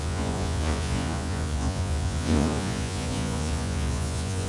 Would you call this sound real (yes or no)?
no